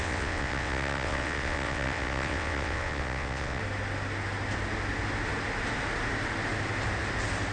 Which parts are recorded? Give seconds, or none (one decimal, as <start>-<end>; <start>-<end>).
3.6-7.5